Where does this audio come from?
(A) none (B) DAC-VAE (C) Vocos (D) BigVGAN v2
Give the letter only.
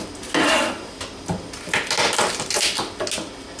A